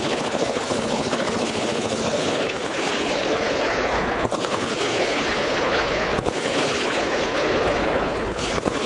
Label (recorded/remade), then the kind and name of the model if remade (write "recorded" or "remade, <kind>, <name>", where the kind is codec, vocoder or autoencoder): remade, codec, HILCodec